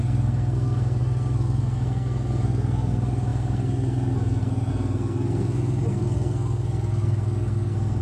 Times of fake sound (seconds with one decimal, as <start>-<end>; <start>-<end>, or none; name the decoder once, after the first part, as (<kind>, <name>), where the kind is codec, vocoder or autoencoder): 0.0-8.0 (codec, SNAC)